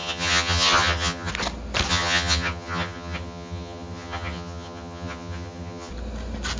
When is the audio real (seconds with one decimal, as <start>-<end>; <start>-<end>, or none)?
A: 1.3-1.9; 5.9-6.6